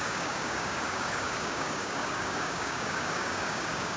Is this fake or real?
fake